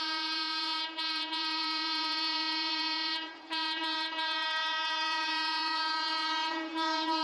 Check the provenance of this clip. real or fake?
fake